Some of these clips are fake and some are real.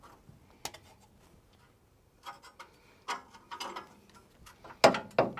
real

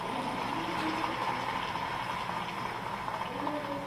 real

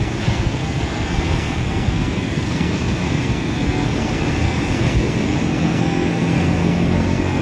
fake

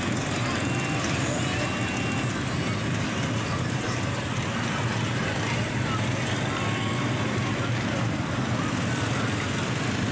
real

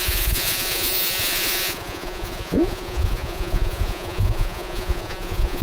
fake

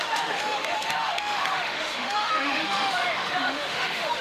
fake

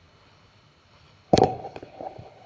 fake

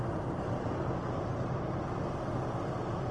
real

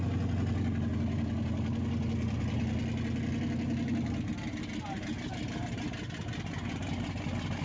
real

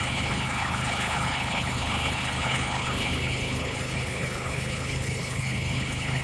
fake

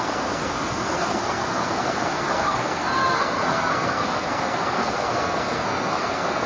fake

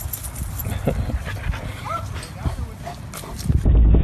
real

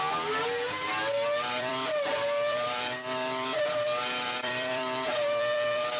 fake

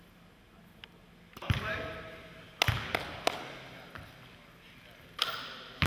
real